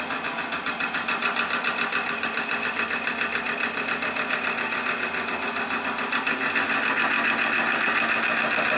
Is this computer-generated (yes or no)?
no